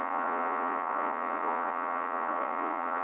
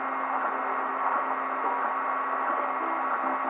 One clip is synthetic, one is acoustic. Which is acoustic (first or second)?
second